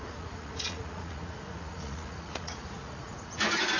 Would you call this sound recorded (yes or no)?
no